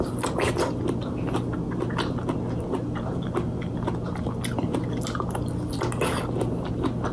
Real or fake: real